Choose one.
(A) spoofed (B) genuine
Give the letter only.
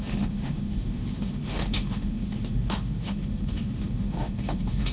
A